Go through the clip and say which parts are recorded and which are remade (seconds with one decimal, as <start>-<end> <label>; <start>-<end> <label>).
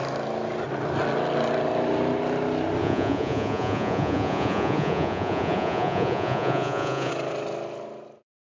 0.0-2.8 recorded; 2.8-7.1 remade; 7.1-8.5 recorded